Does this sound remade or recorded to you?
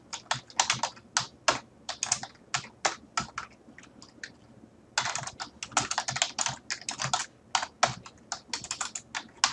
recorded